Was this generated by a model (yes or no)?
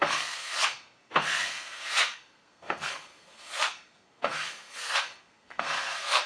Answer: yes